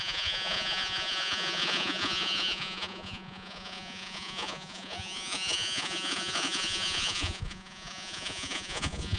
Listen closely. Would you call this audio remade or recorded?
remade